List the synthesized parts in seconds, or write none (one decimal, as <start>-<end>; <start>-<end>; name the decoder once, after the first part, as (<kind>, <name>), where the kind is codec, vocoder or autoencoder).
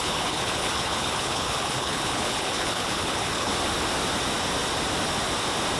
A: 0.0-3.5 (codec, HILCodec)